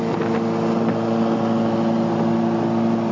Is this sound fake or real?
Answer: real